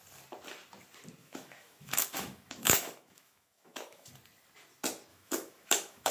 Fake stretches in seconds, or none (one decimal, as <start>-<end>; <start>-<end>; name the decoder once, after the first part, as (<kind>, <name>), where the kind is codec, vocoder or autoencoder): 1.2-4.1 (autoencoder, DAC-VAE); 5.1-6.1